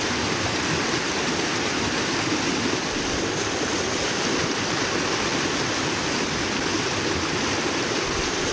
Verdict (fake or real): real